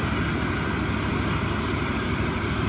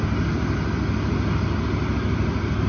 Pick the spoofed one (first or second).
first